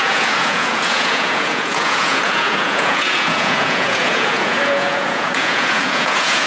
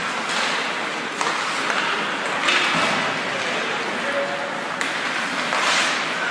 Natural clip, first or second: second